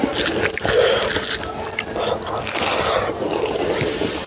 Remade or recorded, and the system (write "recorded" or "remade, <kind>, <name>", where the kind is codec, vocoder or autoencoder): recorded